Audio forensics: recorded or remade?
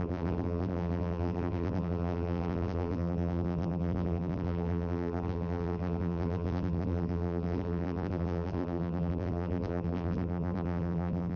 remade